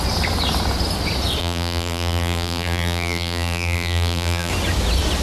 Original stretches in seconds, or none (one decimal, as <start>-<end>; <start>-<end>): 0.0-1.4; 4.5-5.2